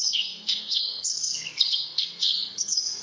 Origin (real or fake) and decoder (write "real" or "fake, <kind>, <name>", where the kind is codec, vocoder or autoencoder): fake, codec, SNAC